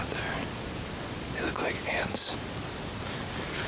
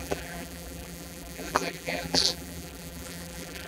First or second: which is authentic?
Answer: first